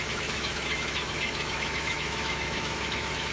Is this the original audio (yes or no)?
no